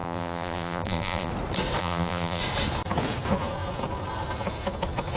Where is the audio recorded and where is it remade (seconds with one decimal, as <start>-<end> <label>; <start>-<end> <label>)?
0.0-1.3 remade; 1.3-1.8 recorded; 1.8-2.4 remade; 2.4-5.2 recorded